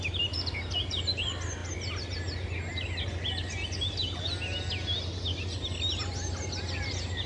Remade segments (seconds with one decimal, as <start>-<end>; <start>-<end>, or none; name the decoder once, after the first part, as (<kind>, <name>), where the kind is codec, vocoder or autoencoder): 0.0-1.6 (vocoder, BigVGAN v2); 6.0-7.3